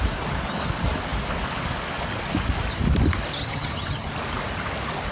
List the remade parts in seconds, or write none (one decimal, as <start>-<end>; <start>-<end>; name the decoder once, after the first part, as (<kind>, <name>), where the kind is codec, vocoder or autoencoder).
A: 3.4-4.1 (vocoder, HiFi-GAN)

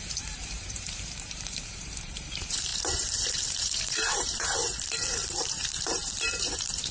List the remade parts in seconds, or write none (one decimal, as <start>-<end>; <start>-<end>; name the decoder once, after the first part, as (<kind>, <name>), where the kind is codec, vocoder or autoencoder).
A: 0.0-6.9 (vocoder, BigVGAN v2)